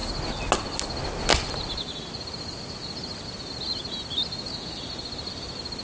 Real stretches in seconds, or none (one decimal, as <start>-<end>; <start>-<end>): 0.0-5.8

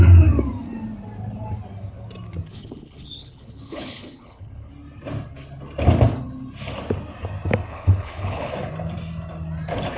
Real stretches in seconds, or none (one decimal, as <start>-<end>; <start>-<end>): 0.0-2.5; 4.7-7.7; 8.5-10.0

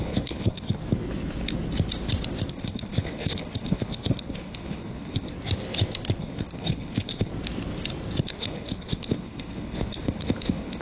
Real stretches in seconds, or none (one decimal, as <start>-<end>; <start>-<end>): 0.8-2.5; 5.3-6.2; 7.3-8.2

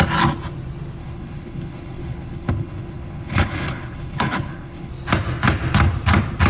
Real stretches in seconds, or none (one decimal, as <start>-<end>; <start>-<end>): 0.0-1.0; 4.9-6.5

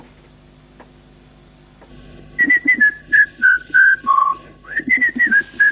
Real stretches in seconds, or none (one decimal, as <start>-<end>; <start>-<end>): 0.0-1.9; 2.4-3.0; 5.0-5.7

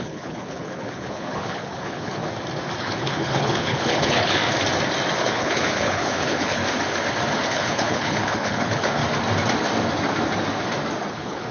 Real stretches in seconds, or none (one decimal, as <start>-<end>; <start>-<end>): 2.2-2.8; 4.4-5.2; 6.6-7.5; 9.0-11.1

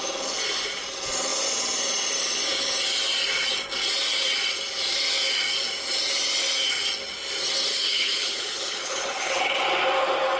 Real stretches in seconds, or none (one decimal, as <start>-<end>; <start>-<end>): 0.0-7.7; 9.6-10.4